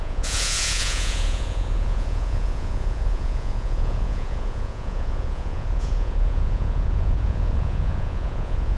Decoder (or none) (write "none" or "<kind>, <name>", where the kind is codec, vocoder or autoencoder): vocoder, Vocos